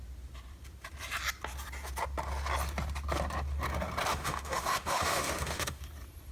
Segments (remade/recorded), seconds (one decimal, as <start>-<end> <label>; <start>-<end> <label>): 0.0-4.1 recorded; 4.1-5.8 remade; 5.8-6.3 recorded